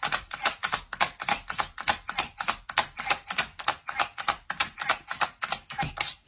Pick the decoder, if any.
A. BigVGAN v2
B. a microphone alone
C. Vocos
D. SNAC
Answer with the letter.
A